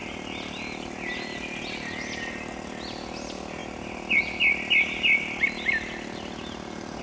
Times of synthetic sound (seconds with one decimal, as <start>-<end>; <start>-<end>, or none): none